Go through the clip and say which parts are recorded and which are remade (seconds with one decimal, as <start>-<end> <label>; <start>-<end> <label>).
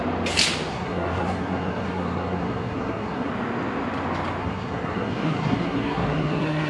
0.0-0.7 recorded; 0.7-3.3 remade; 3.3-4.4 recorded; 4.4-6.7 remade